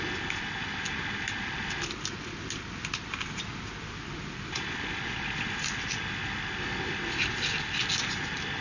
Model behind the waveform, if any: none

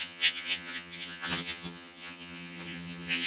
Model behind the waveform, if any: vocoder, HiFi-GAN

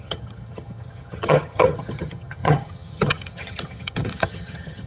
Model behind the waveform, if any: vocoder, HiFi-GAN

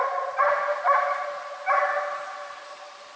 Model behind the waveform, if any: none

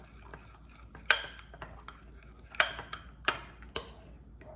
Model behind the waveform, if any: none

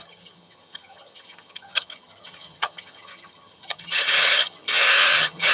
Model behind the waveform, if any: vocoder, HiFi-GAN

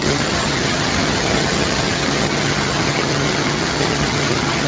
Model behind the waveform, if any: vocoder, HiFi-GAN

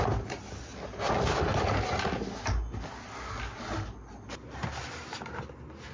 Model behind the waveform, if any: none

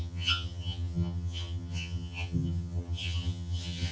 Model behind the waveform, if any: vocoder, HiFi-GAN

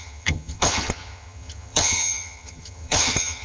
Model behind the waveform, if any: vocoder, HiFi-GAN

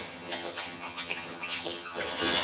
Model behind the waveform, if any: vocoder, HiFi-GAN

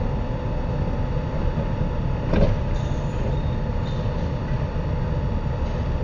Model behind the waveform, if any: none